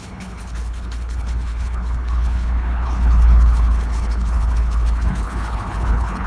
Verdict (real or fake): fake